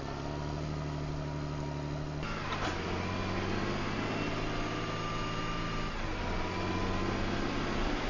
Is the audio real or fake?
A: real